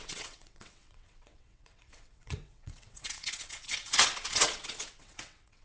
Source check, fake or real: fake